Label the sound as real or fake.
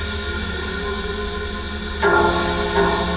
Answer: real